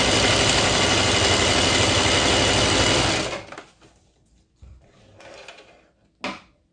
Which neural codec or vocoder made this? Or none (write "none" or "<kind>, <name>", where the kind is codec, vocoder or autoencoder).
none